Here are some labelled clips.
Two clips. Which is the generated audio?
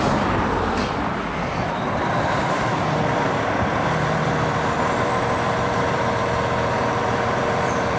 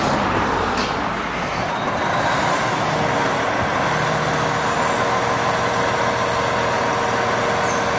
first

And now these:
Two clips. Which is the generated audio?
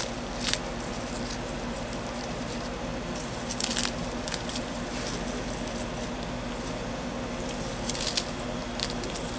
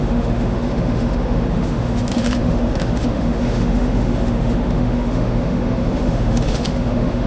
second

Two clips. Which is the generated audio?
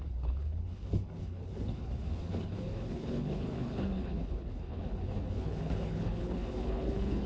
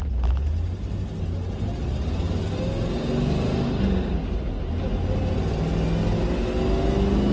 first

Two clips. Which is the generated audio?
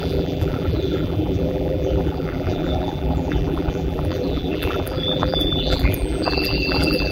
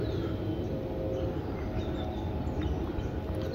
first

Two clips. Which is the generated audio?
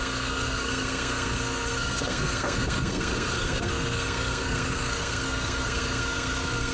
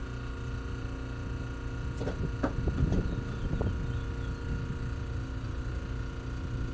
first